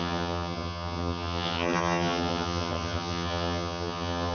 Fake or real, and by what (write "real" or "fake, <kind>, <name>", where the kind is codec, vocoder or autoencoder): fake, vocoder, HiFi-GAN